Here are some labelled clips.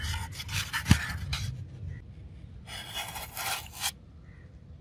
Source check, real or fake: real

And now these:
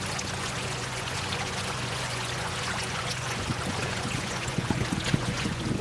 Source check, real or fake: fake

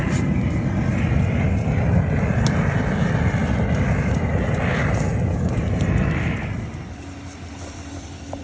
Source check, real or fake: real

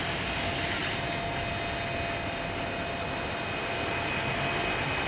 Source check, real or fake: real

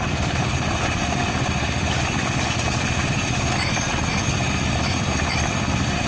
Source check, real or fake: fake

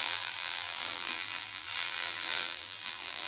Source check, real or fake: fake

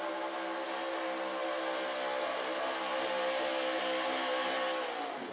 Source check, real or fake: real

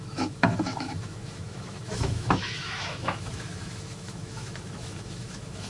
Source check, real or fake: fake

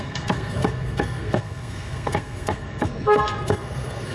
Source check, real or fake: fake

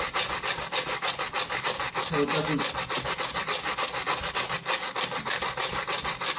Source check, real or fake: real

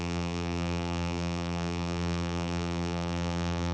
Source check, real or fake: fake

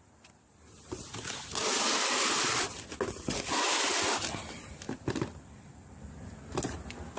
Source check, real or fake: real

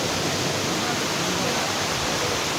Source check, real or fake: real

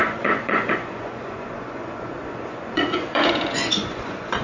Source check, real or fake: fake